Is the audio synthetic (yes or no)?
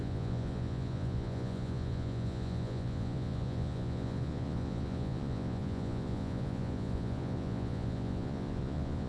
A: yes